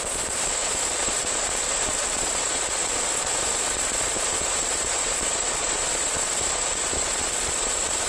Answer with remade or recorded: remade